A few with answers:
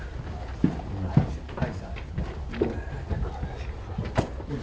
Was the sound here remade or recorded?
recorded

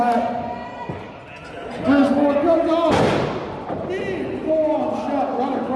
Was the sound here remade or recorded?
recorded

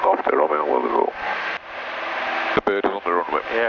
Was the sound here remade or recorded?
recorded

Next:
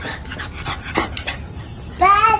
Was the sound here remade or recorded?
recorded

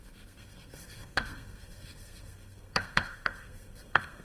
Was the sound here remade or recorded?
remade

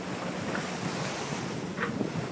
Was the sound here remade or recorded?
recorded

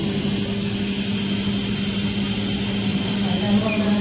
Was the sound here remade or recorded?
recorded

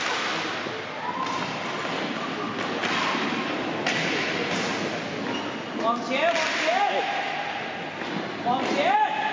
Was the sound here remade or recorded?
recorded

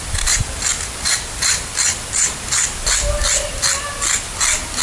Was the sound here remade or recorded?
recorded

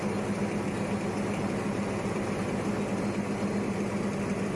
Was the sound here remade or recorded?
recorded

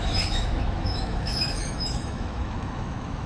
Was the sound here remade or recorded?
remade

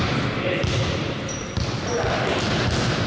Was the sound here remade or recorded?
remade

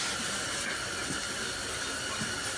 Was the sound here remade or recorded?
recorded